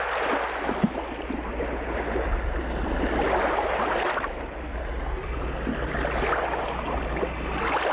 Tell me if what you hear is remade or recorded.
recorded